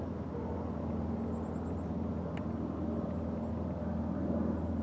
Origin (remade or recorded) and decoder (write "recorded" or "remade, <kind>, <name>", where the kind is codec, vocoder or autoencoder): recorded